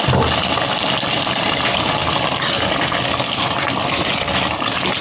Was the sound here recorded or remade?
recorded